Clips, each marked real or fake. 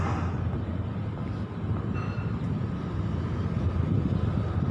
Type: real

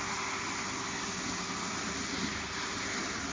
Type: real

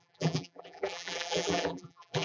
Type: fake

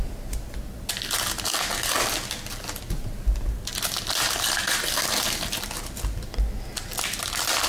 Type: real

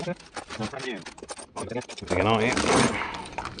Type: fake